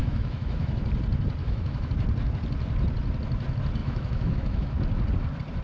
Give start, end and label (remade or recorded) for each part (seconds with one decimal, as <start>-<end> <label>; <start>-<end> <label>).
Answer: 0.0-0.8 remade; 0.8-1.4 recorded; 1.4-1.9 remade; 1.9-3.8 recorded; 3.8-4.7 remade; 4.7-5.6 recorded